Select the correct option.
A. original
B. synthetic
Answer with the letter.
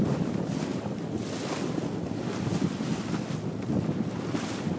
A